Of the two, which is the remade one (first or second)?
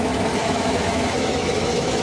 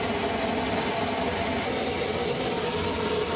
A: first